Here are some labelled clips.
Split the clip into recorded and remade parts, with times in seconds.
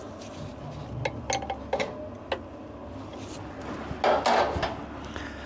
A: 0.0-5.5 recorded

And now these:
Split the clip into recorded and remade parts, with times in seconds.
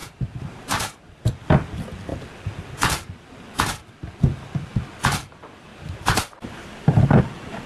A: 0.0-1.3 remade; 1.3-5.7 recorded; 5.7-7.2 remade; 7.2-7.7 recorded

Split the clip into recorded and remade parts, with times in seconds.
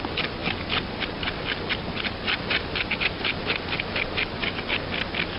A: 0.0-0.4 recorded; 0.4-3.6 remade; 3.6-5.4 recorded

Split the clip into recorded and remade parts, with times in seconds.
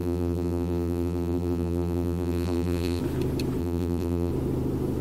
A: 0.0-3.0 remade; 3.0-3.6 recorded; 3.6-4.3 remade; 4.3-5.0 recorded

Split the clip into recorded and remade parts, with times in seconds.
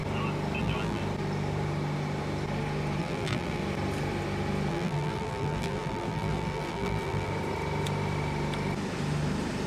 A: 0.0-0.6 recorded; 0.6-1.0 remade; 1.0-3.0 recorded; 3.0-3.6 remade; 3.6-4.7 recorded; 4.7-7.3 remade; 7.3-9.7 recorded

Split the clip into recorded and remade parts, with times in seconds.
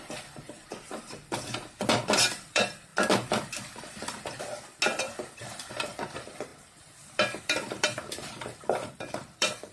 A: 0.0-2.9 remade; 2.9-5.3 recorded; 5.3-9.7 remade